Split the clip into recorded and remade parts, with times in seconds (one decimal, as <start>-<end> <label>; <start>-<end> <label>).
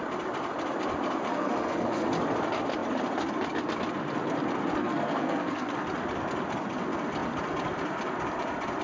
0.0-1.3 recorded; 1.3-2.1 remade; 2.1-4.8 recorded; 4.8-5.7 remade; 5.7-8.8 recorded